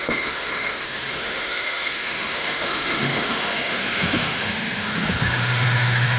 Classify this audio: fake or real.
fake